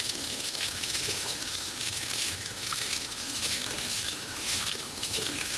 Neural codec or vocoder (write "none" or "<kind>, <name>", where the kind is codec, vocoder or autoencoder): autoencoder, DAC-VAE